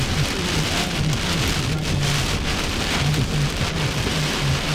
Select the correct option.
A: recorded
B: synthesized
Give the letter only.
A